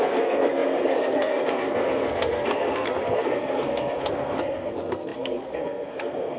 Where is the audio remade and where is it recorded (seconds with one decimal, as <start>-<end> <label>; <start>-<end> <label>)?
0.0-6.4 remade

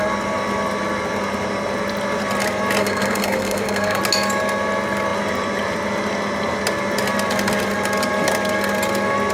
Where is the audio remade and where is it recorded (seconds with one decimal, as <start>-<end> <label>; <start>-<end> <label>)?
0.0-2.8 recorded; 2.8-4.0 remade; 4.0-9.3 recorded

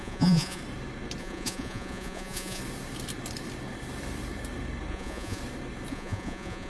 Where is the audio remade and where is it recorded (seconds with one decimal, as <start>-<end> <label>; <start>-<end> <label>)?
0.0-0.6 remade; 0.6-1.2 recorded; 1.2-2.6 remade; 2.6-4.9 recorded; 4.9-5.4 remade; 5.4-5.9 recorded; 5.9-6.7 remade

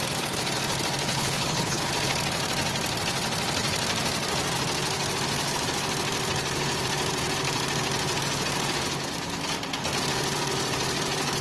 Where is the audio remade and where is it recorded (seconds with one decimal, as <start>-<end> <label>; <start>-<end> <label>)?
0.0-1.1 recorded; 1.1-1.9 remade; 1.9-11.4 recorded

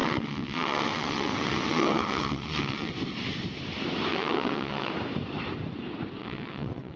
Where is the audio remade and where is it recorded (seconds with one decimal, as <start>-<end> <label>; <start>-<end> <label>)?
0.0-2.9 remade; 2.9-4.1 recorded; 4.1-4.9 remade; 4.9-6.2 recorded; 6.2-7.0 remade

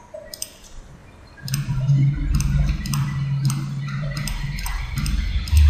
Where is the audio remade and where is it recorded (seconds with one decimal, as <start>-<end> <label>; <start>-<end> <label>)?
0.0-5.7 remade

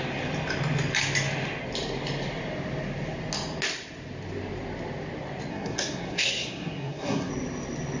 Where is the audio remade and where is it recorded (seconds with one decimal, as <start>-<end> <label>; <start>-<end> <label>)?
0.0-5.5 recorded; 5.5-7.3 remade; 7.3-8.0 recorded

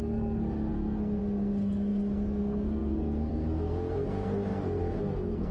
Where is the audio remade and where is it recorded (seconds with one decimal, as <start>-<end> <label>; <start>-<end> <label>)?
0.0-5.5 remade